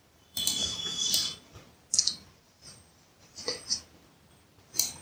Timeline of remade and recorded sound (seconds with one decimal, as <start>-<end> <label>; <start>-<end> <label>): 0.0-0.6 recorded; 0.6-1.1 remade; 1.1-5.0 recorded